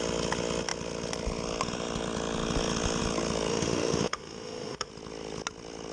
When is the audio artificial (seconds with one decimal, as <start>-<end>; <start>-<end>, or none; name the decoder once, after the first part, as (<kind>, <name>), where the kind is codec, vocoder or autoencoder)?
3.5-4.9 (autoencoder, DAC-VAE)